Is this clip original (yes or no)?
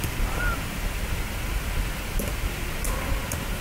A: yes